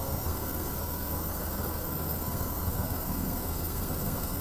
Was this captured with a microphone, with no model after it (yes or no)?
no